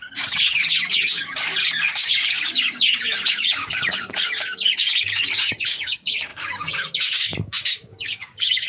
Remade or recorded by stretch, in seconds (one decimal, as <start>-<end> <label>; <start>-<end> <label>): 0.0-8.7 remade